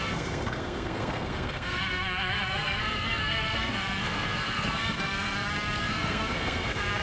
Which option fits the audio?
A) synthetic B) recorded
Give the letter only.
A